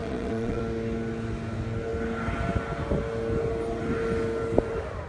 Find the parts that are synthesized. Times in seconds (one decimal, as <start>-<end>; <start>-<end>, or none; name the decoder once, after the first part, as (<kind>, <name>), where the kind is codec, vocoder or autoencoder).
0.0-0.6 (vocoder, Vocos)